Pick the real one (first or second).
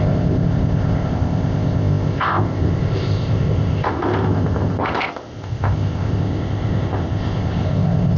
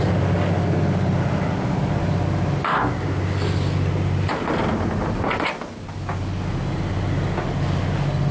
second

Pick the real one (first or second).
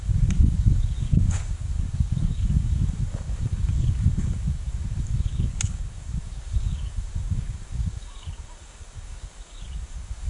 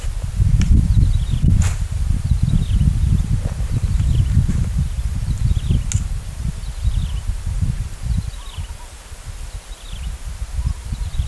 second